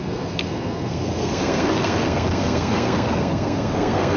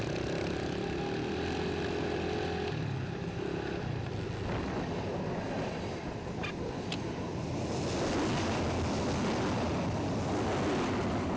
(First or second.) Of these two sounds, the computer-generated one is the first